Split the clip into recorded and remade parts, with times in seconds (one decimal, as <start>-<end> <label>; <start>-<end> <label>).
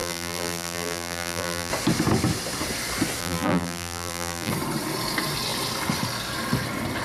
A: 0.0-1.7 remade; 1.7-3.2 recorded; 3.2-4.5 remade; 4.5-7.0 recorded